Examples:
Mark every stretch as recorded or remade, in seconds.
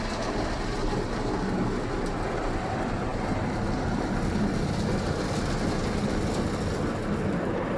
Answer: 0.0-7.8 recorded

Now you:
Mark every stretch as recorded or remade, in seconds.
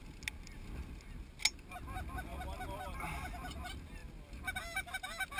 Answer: 0.0-5.4 recorded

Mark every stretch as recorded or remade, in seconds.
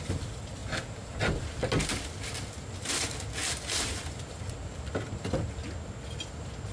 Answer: 0.0-6.7 recorded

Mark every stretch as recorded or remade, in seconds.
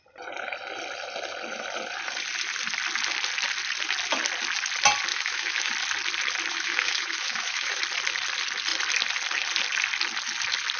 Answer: 0.0-5.1 recorded; 5.1-5.7 remade; 5.7-6.5 recorded; 6.5-7.8 remade; 7.8-10.8 recorded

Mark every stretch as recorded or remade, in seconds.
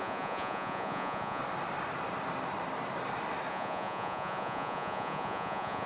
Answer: 0.0-1.4 remade; 1.4-3.5 recorded; 3.5-5.9 remade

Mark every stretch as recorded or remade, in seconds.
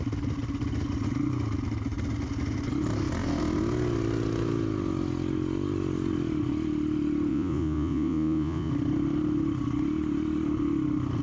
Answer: 0.0-7.3 recorded; 7.3-8.7 remade; 8.7-11.2 recorded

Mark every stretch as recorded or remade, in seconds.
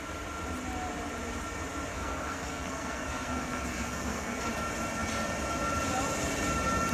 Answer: 0.0-1.9 recorded; 1.9-4.5 remade; 4.5-6.9 recorded